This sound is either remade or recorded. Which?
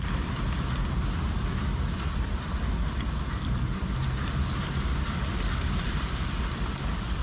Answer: recorded